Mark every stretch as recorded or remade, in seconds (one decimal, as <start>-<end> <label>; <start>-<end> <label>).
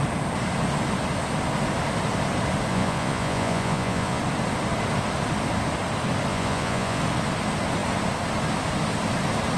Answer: 0.0-2.7 recorded; 2.7-4.2 remade; 4.2-6.3 recorded; 6.3-7.0 remade; 7.0-9.6 recorded